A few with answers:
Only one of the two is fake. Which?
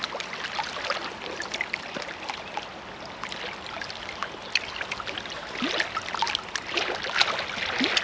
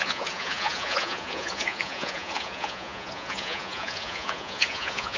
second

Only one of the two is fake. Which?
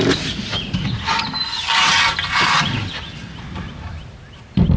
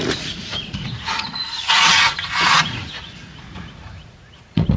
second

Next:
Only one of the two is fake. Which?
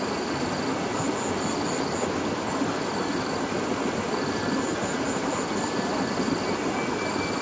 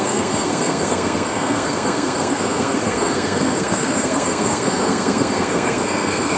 second